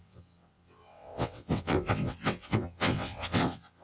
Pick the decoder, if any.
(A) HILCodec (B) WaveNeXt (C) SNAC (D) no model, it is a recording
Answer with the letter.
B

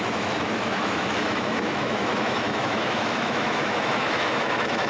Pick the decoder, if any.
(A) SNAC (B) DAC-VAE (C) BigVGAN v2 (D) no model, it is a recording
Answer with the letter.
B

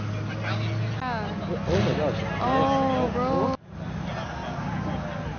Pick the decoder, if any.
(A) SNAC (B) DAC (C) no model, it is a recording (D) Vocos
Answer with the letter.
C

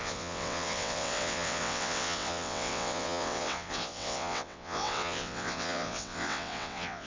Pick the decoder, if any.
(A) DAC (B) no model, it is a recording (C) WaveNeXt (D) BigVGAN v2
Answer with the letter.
C